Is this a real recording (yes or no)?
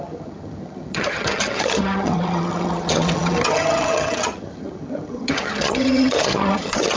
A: no